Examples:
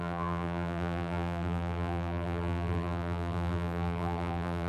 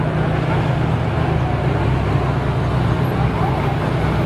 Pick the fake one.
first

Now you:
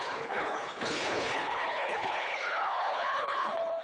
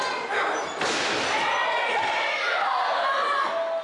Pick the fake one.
first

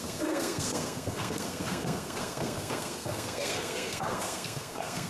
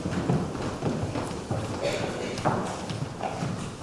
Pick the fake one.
first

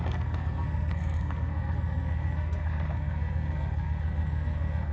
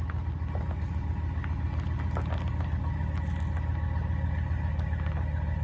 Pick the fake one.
first